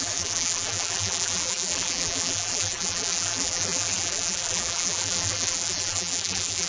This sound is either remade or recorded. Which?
remade